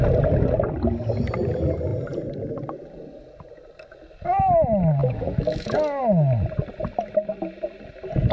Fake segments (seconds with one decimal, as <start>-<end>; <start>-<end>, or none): 5.0-6.0